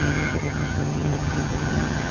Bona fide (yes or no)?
no